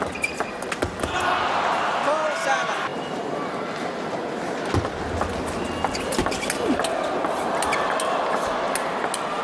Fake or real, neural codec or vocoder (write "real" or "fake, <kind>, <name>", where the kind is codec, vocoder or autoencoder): real